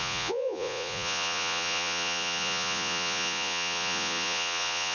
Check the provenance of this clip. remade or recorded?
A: remade